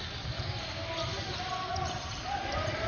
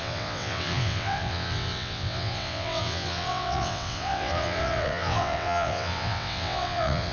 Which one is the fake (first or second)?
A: second